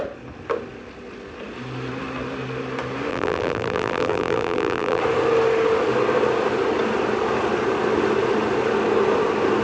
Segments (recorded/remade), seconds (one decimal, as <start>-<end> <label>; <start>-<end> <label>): 0.0-3.1 recorded; 3.1-5.0 remade; 5.0-9.6 recorded